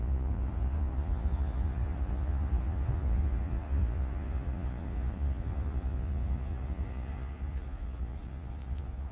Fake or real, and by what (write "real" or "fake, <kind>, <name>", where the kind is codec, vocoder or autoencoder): fake, vocoder, Vocos